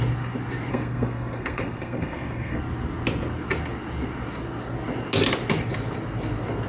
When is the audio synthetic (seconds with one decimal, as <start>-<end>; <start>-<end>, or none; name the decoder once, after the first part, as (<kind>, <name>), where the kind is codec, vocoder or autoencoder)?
0.7-2.6 (codec, SNAC)